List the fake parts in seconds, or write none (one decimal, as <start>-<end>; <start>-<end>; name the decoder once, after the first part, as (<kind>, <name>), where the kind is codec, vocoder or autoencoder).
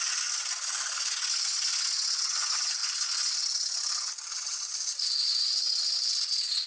none